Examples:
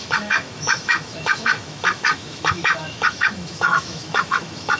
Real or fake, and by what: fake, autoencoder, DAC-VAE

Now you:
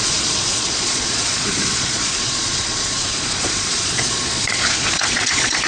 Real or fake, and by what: fake, vocoder, Vocos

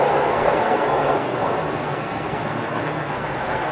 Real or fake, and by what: fake, codec, SNAC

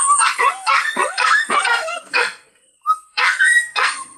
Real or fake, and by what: fake, codec, SNAC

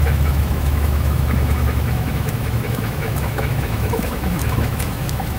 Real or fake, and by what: fake, autoencoder, DAC-VAE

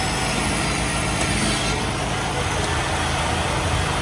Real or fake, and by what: real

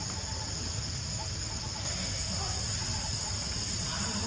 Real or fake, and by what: real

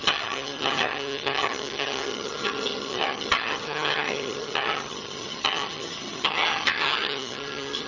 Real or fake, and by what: fake, vocoder, HiFi-GAN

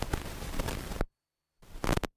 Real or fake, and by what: fake, vocoder, BigVGAN v2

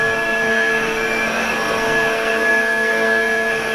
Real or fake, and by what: fake, codec, SNAC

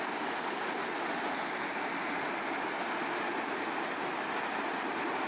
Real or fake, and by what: real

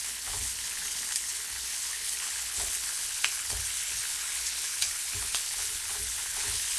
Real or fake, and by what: fake, codec, HILCodec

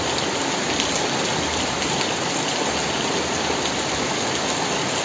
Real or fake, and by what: real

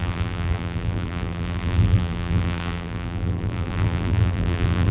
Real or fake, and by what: fake, vocoder, BigVGAN v2